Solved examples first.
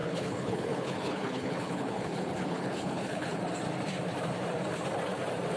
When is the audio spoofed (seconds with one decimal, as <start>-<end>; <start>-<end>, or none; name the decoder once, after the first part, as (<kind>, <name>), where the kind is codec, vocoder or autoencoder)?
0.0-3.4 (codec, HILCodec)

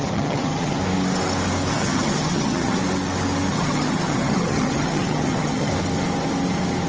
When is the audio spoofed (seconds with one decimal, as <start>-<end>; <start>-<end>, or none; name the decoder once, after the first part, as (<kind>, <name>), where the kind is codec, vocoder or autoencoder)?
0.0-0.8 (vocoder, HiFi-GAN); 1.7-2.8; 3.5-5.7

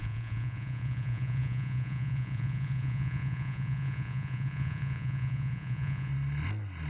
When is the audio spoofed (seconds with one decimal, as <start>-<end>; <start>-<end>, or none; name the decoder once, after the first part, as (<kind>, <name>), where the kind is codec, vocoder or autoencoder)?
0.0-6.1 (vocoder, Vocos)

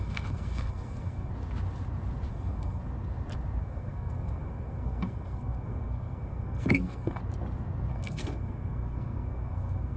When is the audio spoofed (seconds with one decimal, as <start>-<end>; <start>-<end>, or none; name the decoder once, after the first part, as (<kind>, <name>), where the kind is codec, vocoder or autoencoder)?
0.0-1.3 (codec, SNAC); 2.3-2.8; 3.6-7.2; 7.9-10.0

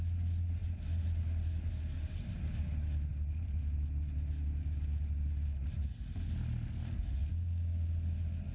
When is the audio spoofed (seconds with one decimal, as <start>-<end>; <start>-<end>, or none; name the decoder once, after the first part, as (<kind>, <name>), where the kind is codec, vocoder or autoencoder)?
none